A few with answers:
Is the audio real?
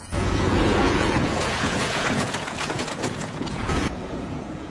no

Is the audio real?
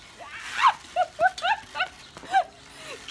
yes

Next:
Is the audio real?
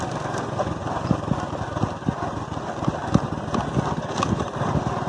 yes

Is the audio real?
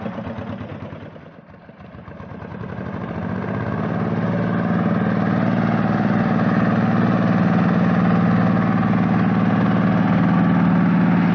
yes